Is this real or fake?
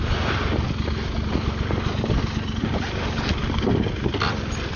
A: real